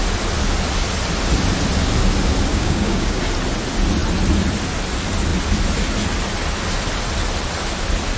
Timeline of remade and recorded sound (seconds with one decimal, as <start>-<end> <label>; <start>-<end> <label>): 0.0-2.5 recorded; 2.5-3.2 remade; 3.2-8.2 recorded